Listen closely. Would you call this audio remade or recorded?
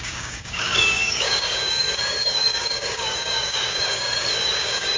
remade